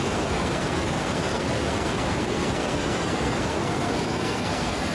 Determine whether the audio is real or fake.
fake